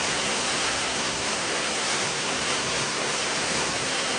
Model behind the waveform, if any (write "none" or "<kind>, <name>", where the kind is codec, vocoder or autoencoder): codec, SNAC